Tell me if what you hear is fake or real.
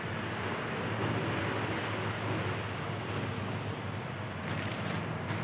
real